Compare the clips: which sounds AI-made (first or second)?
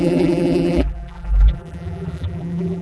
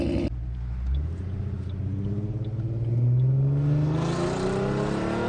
first